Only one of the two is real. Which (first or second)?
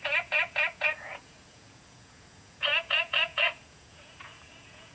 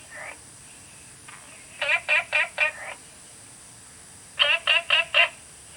second